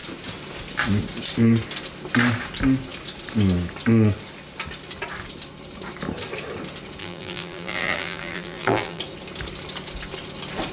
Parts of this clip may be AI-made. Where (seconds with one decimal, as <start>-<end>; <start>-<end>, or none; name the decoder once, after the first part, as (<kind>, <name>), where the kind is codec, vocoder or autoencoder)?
7.0-9.0 (vocoder, BigVGAN v2)